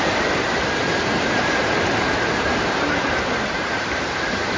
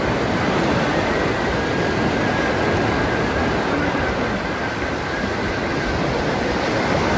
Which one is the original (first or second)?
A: second